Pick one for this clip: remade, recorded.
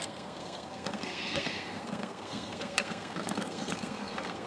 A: remade